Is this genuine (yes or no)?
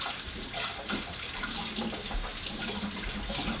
yes